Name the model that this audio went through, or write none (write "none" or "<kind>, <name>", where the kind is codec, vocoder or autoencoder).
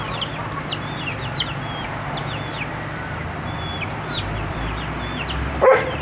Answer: vocoder, BigVGAN v2